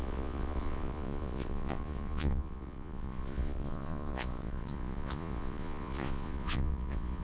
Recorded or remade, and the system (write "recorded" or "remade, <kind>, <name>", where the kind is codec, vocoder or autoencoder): remade, vocoder, Vocos